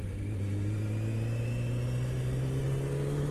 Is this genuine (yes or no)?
yes